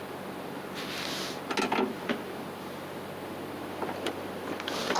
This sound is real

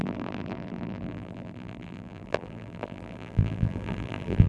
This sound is fake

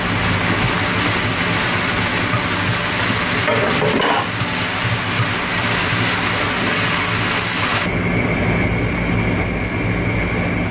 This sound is real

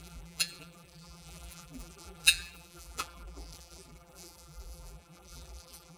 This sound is fake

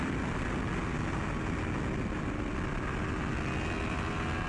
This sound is real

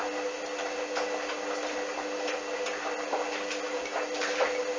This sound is real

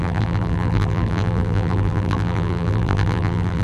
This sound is fake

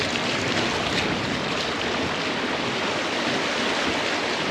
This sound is real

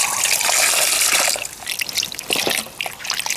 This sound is real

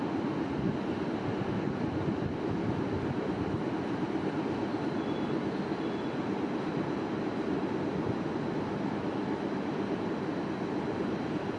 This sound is real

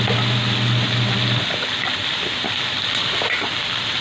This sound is real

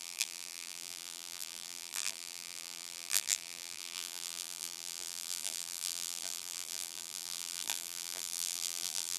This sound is fake